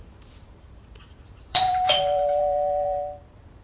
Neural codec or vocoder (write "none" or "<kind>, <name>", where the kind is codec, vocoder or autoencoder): vocoder, BigVGAN v2